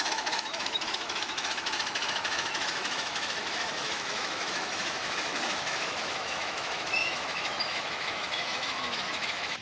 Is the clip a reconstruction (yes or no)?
yes